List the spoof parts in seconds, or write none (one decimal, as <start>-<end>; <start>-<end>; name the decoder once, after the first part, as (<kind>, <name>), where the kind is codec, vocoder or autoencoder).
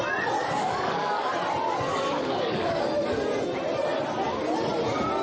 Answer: 0.6-1.3 (codec, DAC); 1.9-2.8